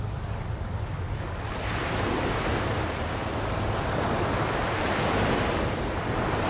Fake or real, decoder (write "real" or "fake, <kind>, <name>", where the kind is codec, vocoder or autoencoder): real